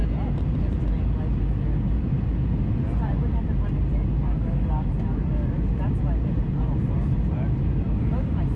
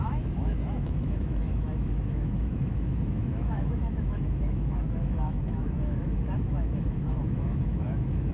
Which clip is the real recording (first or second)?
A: first